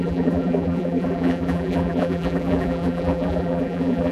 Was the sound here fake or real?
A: fake